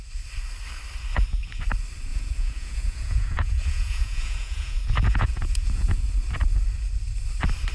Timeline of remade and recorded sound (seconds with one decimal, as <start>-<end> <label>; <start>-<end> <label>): 0.0-2.1 recorded; 2.1-6.0 remade; 6.0-7.7 recorded